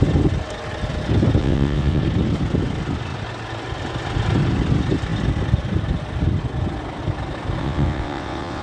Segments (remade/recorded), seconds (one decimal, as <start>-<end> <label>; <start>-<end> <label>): 0.0-1.4 recorded; 1.4-2.0 remade; 2.0-7.6 recorded; 7.6-8.6 remade